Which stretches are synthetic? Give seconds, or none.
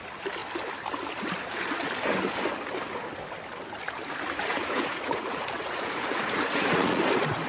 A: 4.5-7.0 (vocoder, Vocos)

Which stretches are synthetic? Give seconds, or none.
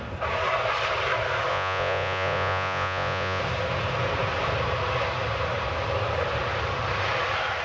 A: 1.5-3.4 (vocoder, Vocos)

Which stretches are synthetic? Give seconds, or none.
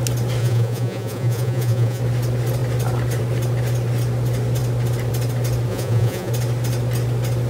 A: 0.4-2.0 (vocoder, Vocos); 5.7-6.3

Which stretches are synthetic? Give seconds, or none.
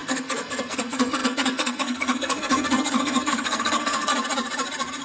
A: 0.0-4.1 (codec, SNAC)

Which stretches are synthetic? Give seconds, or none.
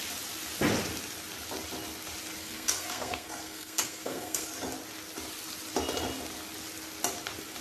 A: 2.4-4.5 (codec, SNAC)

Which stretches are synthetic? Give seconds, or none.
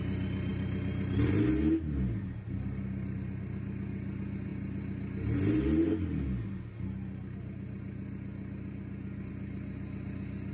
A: none